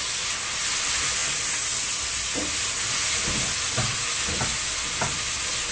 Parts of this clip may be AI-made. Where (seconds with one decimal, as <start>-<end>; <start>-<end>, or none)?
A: none